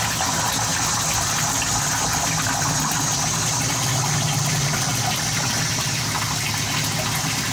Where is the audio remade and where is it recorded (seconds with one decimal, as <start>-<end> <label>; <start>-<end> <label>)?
0.0-7.5 recorded